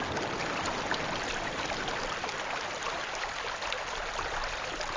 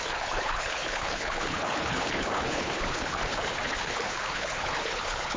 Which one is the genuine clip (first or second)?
first